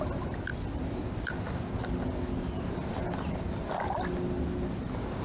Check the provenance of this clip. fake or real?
real